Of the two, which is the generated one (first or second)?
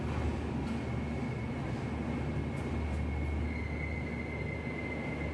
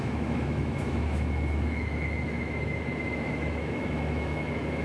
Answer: second